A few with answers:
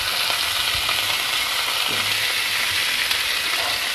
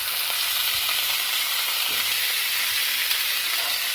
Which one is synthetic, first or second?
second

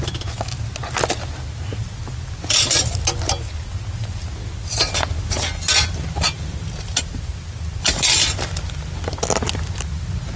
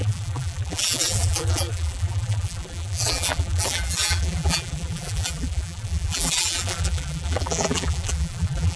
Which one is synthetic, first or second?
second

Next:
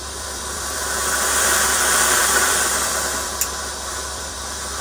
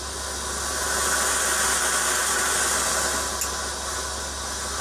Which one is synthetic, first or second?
first